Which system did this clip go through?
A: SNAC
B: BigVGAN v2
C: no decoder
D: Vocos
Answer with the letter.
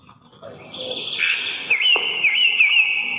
C